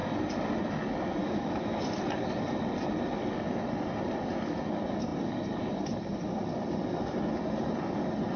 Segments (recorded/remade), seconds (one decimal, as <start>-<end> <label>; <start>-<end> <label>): 0.0-1.2 recorded; 1.2-1.8 remade; 1.8-8.4 recorded